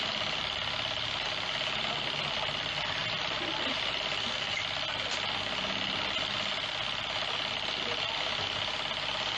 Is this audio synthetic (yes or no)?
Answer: no